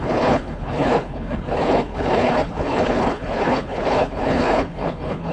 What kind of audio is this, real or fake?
fake